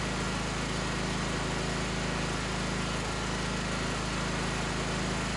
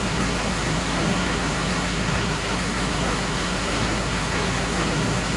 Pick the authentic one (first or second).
first